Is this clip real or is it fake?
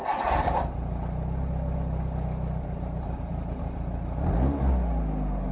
real